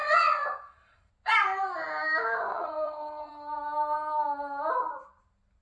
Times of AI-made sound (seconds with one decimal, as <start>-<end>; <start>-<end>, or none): 0.0-1.1; 2.5-3.3